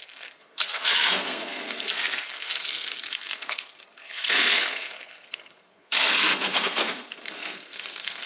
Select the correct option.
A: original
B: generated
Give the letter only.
B